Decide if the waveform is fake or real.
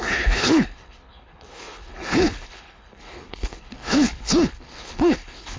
fake